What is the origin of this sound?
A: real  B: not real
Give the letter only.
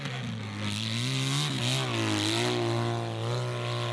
A